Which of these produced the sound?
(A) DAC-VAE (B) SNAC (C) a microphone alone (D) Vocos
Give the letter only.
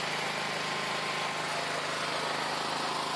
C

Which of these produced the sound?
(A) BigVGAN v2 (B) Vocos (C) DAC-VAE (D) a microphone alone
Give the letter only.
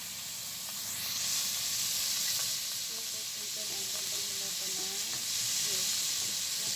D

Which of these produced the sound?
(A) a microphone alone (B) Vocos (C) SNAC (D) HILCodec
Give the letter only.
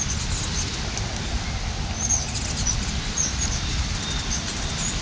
A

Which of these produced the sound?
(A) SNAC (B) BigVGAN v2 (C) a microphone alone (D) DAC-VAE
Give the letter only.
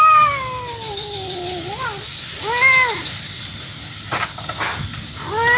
C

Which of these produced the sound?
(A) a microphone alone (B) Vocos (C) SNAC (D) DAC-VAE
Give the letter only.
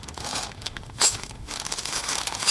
D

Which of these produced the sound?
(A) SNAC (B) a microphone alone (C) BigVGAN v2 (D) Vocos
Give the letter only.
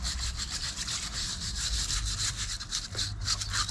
B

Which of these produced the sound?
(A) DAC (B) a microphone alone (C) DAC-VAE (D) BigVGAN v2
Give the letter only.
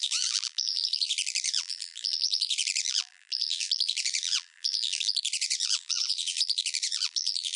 D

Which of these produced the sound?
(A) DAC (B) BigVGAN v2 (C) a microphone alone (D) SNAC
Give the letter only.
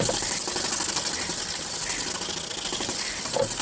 C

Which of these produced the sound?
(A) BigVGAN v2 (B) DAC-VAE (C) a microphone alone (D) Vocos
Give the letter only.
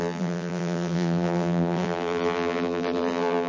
A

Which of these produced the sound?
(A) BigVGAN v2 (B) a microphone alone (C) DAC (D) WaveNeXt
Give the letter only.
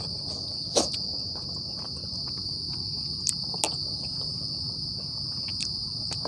B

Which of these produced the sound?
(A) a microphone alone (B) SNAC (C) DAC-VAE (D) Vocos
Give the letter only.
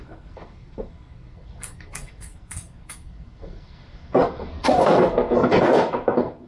B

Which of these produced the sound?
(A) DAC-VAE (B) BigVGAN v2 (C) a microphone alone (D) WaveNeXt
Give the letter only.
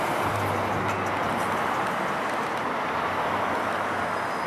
C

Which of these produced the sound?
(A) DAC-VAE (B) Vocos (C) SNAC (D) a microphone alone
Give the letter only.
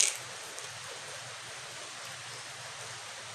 D